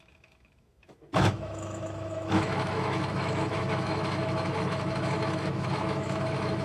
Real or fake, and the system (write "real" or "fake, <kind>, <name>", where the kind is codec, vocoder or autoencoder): fake, autoencoder, DAC-VAE